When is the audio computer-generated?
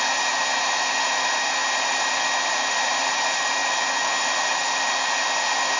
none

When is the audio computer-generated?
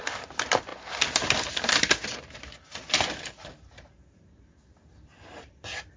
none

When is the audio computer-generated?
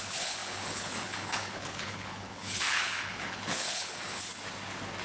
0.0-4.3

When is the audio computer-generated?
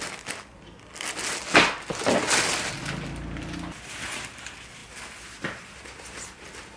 none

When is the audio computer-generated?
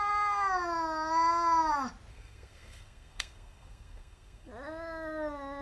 2.1-4.5